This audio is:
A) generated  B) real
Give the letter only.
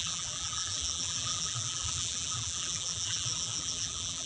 A